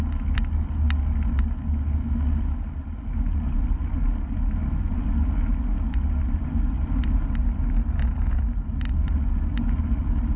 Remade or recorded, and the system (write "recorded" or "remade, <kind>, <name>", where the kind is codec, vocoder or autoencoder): recorded